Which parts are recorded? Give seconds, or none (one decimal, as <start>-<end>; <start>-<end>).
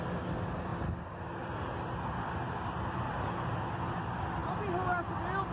0.0-5.5